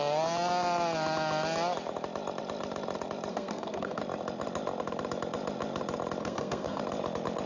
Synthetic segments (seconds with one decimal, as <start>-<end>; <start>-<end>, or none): 3.3-4.0; 6.2-6.8